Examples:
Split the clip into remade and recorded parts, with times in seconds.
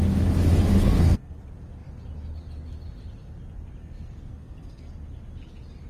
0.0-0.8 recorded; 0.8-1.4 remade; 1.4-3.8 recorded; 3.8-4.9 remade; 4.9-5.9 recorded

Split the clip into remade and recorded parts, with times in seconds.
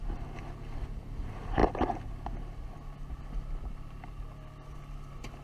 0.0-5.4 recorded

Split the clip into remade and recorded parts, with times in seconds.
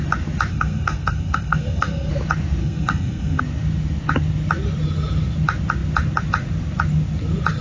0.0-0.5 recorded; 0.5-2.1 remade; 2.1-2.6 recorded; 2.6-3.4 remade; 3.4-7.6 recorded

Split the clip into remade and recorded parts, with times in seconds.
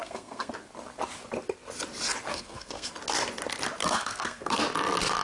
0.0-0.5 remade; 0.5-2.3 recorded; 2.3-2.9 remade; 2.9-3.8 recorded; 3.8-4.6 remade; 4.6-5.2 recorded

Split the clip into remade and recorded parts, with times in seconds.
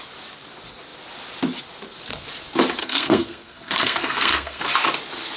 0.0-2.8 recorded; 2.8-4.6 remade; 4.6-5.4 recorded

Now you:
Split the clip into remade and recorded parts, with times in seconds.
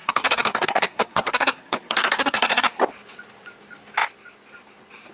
0.0-2.8 remade; 2.8-5.1 recorded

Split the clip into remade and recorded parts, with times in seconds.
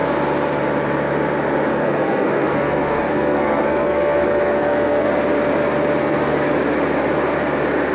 0.0-1.7 recorded; 1.7-5.1 remade; 5.1-6.0 recorded; 6.0-6.5 remade; 6.5-7.9 recorded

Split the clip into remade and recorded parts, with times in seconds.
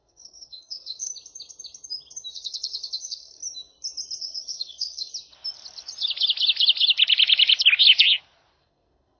0.0-1.1 remade; 1.1-2.3 recorded; 2.3-3.4 remade; 3.4-4.2 recorded; 4.2-5.1 remade; 5.1-8.6 recorded; 8.6-9.2 remade